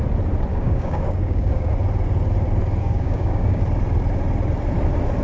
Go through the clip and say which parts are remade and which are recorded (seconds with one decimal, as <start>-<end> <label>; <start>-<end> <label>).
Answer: 0.0-0.5 recorded; 0.5-1.7 remade; 1.7-2.8 recorded; 2.8-3.6 remade; 3.6-5.2 recorded

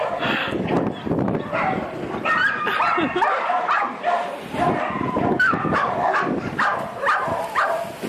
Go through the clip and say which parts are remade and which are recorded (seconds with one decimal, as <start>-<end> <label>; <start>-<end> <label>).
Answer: 0.0-0.4 remade; 0.4-5.3 recorded; 5.3-6.7 remade; 6.7-8.1 recorded

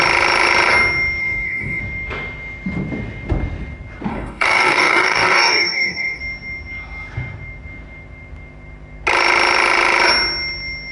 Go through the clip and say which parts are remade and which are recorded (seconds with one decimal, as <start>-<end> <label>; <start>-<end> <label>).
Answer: 0.0-1.2 recorded; 1.2-1.8 remade; 1.8-4.1 recorded; 4.1-6.2 remade; 6.2-10.9 recorded

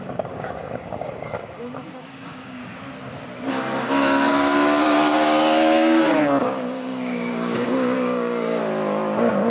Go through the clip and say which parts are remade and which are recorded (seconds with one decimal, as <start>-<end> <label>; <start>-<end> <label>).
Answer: 0.0-2.6 remade; 2.6-3.5 recorded; 3.5-8.6 remade; 8.6-9.5 recorded

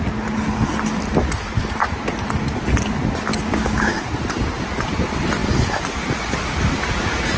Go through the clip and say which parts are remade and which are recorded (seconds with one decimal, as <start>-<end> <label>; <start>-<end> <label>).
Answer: 0.0-3.3 recorded; 3.3-4.0 remade; 4.0-7.4 recorded

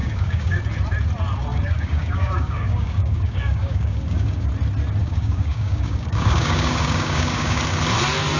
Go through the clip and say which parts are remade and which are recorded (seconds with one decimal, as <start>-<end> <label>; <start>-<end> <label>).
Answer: 0.0-0.6 remade; 0.6-1.5 recorded; 1.5-4.5 remade; 4.5-5.0 recorded; 5.0-7.6 remade; 7.6-8.4 recorded

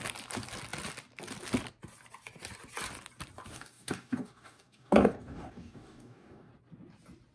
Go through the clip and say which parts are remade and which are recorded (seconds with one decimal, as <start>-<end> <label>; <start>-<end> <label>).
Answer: 0.0-3.5 recorded; 3.5-6.5 remade; 6.5-7.3 recorded